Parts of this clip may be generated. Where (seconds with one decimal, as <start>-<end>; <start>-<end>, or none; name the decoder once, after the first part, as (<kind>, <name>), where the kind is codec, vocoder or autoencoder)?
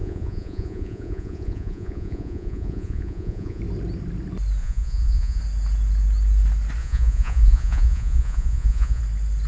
0.0-3.6 (vocoder, Vocos); 4.6-5.4; 6.8-9.0